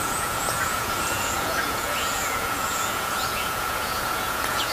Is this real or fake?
fake